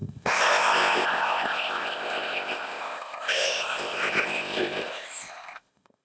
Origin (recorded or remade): remade